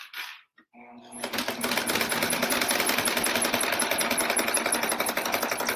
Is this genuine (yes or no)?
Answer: yes